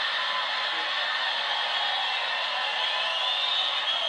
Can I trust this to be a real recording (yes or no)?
yes